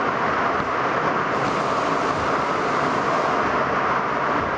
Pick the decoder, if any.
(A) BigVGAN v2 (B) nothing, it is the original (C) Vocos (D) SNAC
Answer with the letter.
B